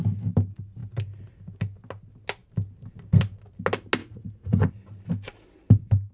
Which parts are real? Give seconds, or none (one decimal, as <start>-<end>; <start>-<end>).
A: 0.0-4.0; 4.7-6.1